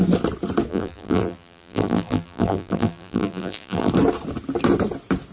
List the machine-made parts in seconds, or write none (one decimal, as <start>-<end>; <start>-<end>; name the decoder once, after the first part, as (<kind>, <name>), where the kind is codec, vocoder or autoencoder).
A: 0.7-3.9 (vocoder, BigVGAN v2)